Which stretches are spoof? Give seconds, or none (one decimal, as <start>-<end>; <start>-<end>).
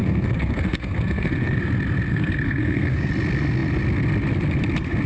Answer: 0.0-1.6; 2.1-3.1